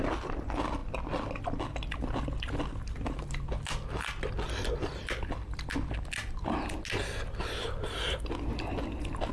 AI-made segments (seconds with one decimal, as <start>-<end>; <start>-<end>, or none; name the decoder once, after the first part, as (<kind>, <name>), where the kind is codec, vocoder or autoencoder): none